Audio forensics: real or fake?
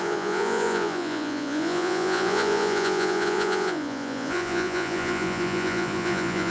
fake